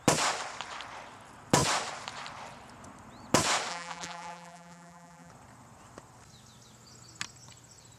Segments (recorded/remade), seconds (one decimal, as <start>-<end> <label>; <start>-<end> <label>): 0.0-3.7 recorded; 3.7-5.3 remade; 5.3-8.0 recorded